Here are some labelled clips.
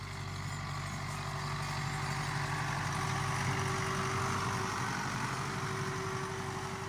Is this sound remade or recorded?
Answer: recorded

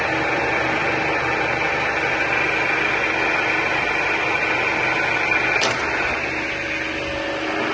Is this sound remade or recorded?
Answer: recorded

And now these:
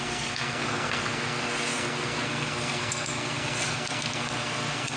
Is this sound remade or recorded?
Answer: remade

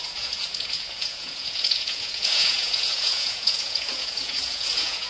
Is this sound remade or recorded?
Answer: remade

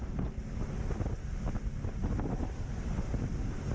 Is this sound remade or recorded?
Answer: recorded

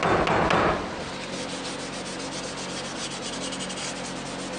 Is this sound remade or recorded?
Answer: recorded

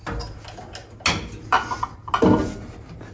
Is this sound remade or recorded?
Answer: recorded